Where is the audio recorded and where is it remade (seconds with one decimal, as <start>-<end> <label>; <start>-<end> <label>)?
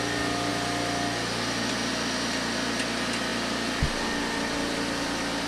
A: 0.0-5.5 recorded